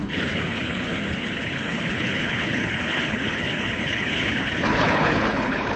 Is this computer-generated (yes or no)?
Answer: yes